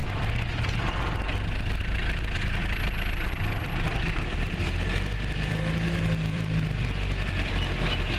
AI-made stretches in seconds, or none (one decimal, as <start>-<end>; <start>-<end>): 0.0-0.9; 2.6-7.5